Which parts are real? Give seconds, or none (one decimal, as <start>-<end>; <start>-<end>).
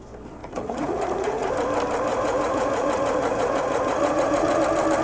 0.0-0.4; 1.5-2.1; 4.6-5.0